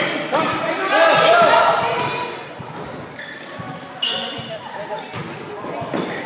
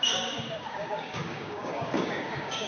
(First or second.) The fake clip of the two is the second